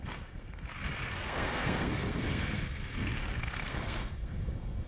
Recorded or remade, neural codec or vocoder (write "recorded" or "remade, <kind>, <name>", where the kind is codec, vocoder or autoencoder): remade, codec, SNAC